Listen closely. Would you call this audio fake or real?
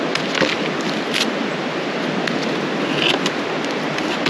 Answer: real